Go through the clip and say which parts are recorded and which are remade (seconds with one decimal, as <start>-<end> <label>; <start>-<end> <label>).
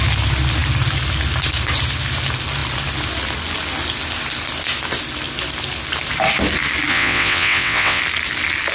0.0-6.9 recorded; 6.9-8.0 remade; 8.0-8.7 recorded